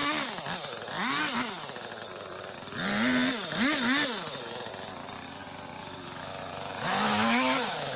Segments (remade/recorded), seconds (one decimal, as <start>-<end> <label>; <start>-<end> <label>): 0.0-5.8 recorded; 5.8-8.0 remade